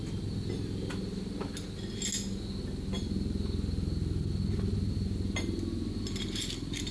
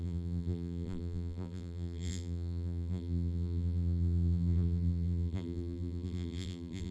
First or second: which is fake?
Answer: second